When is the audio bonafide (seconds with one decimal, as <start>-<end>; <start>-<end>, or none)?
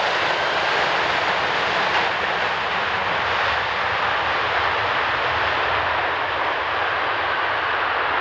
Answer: 0.0-8.2